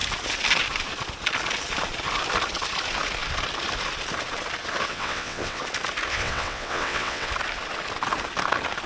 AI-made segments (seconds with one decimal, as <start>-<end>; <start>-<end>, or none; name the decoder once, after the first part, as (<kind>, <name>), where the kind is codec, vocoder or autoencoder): 4.9-5.6 (vocoder, WaveNeXt); 6.1-7.3